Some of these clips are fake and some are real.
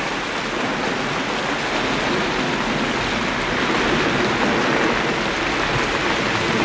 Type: real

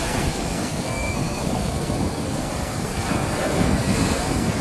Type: fake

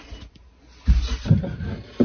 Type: real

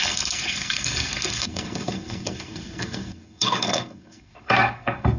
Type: fake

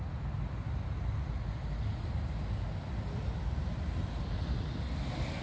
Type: real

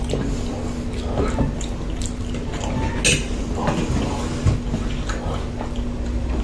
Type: real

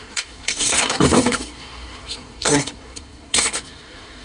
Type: fake